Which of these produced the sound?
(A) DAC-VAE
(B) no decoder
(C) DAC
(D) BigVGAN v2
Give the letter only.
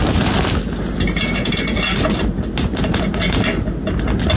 B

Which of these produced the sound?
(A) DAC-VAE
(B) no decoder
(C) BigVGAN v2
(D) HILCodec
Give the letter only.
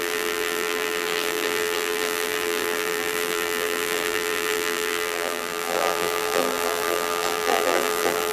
C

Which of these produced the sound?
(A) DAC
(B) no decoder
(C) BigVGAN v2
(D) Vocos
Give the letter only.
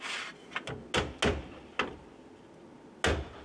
B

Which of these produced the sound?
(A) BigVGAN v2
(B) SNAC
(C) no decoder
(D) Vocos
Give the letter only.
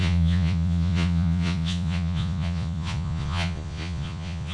D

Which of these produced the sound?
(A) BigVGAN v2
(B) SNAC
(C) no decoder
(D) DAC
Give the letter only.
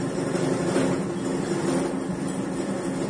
C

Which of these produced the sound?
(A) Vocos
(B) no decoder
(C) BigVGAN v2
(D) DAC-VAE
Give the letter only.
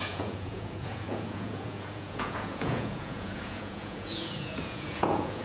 A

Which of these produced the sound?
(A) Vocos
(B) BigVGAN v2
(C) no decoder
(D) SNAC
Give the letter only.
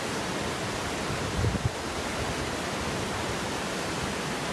C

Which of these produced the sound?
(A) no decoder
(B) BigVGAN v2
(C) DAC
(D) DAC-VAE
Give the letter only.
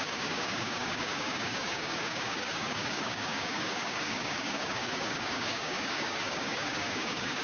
C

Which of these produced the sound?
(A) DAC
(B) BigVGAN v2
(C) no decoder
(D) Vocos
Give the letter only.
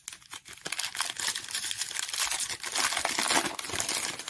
C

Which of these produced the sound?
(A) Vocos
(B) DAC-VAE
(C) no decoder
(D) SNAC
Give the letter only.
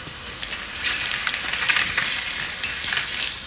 C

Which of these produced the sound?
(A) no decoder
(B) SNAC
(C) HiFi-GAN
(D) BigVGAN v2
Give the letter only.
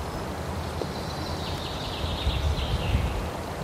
A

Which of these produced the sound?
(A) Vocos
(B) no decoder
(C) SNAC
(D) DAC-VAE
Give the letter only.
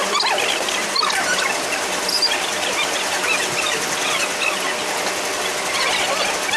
B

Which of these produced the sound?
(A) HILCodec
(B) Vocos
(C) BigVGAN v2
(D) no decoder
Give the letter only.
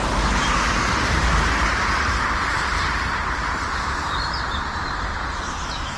C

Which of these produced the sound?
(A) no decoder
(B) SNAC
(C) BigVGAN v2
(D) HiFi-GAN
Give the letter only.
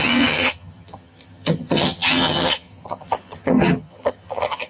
D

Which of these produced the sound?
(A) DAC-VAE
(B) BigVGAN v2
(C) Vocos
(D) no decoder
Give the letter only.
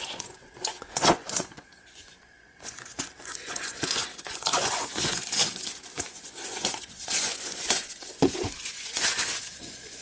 C